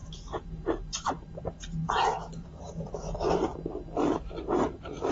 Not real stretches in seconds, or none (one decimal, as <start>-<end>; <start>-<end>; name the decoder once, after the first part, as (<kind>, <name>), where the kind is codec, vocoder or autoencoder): 0.0-3.5 (vocoder, BigVGAN v2); 4.1-5.1